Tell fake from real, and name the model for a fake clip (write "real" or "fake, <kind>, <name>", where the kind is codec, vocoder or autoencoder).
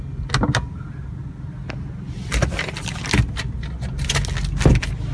real